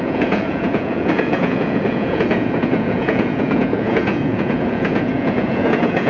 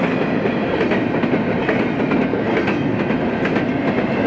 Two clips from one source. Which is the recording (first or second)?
second